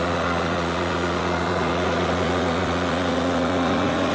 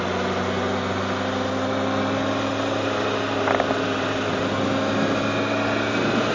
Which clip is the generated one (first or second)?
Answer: first